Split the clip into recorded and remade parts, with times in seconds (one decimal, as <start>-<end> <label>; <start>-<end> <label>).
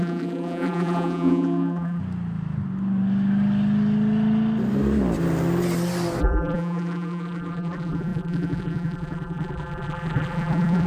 0.0-2.0 remade; 2.0-6.2 recorded; 6.2-10.9 remade